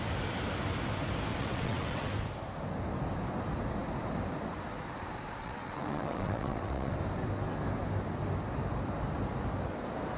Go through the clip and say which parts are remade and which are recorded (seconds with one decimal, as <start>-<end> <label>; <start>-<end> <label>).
0.0-1.3 recorded; 1.3-2.1 remade; 2.1-5.4 recorded; 5.4-6.9 remade; 6.9-10.2 recorded